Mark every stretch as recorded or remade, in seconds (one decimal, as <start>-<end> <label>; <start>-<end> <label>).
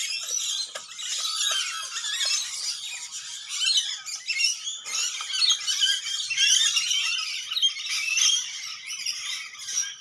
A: 0.0-10.0 recorded